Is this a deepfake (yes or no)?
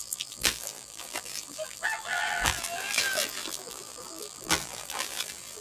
yes